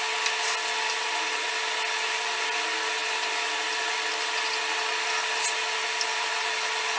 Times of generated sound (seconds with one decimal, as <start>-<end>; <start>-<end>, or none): none